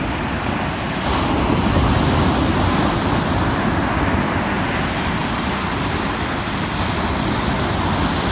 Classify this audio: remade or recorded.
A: recorded